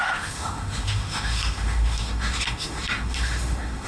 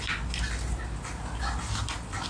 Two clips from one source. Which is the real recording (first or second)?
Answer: second